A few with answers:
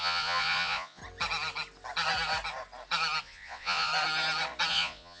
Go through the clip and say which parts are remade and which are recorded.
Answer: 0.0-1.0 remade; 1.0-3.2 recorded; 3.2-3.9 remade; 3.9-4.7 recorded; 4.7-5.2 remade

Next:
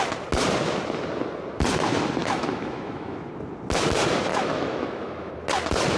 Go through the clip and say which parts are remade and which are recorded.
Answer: 0.0-2.2 recorded; 2.2-3.3 remade; 3.3-4.3 recorded; 4.3-5.3 remade; 5.3-6.0 recorded

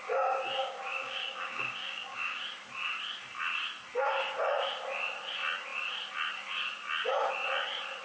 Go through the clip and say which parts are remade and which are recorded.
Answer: 0.0-0.6 recorded; 0.6-2.4 remade; 2.4-8.0 recorded

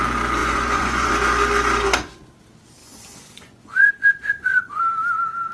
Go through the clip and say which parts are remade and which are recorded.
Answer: 0.0-0.4 recorded; 0.4-1.1 remade; 1.1-2.8 recorded; 2.8-4.8 remade; 4.8-5.5 recorded

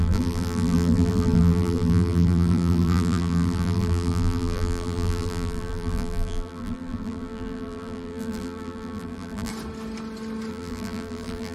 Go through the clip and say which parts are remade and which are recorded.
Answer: 0.0-9.5 remade; 9.5-10.5 recorded; 10.5-11.5 remade